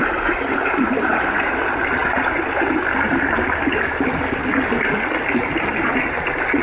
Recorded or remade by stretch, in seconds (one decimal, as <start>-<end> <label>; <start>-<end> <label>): 0.0-1.5 remade; 1.5-6.6 recorded